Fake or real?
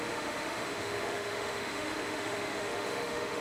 fake